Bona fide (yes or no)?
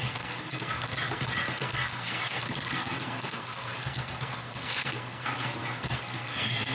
no